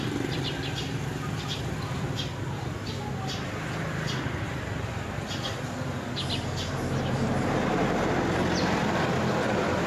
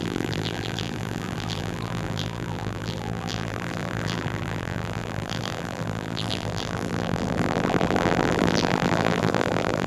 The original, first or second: first